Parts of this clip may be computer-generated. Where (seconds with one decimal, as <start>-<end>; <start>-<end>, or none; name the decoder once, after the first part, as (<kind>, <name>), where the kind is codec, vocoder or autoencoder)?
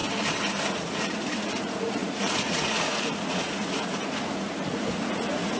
0.7-5.6 (vocoder, Vocos)